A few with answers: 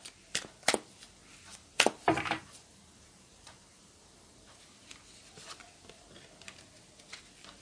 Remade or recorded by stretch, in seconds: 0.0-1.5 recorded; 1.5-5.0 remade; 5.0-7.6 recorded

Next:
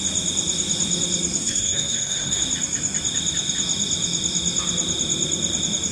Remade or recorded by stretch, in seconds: 0.0-1.4 recorded; 1.4-2.4 remade; 2.4-5.9 recorded

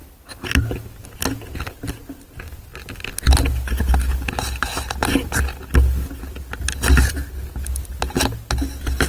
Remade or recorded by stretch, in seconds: 0.0-9.1 recorded

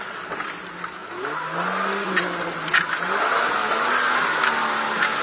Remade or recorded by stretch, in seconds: 0.0-5.2 recorded

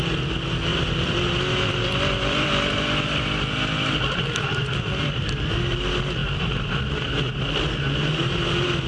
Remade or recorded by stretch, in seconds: 0.0-0.7 recorded; 0.7-5.2 remade; 5.2-8.9 recorded